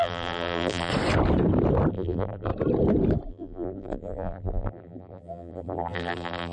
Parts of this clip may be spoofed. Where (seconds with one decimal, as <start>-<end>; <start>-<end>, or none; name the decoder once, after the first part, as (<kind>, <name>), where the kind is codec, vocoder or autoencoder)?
0.0-0.9 (vocoder, BigVGAN v2); 1.9-2.5; 3.3-6.5